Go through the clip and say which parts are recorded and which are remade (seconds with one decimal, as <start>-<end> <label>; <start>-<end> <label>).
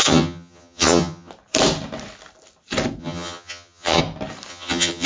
0.0-1.3 remade; 1.3-3.0 recorded; 3.0-4.0 remade; 4.0-4.5 recorded; 4.5-5.1 remade